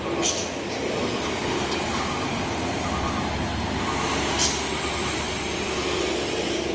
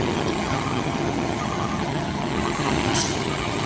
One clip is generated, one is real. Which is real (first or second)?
first